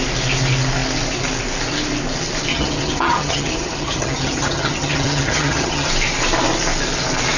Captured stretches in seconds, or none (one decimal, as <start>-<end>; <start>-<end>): 0.0-2.5; 5.9-7.4